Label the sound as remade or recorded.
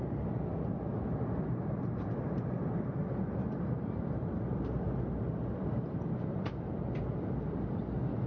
recorded